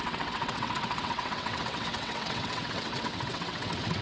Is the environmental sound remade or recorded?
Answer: remade